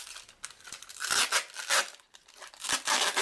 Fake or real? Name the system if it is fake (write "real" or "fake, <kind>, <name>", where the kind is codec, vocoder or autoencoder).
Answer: real